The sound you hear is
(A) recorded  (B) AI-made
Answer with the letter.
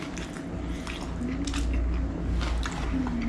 A